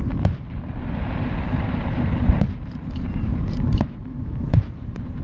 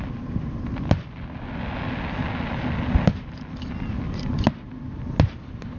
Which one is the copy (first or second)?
first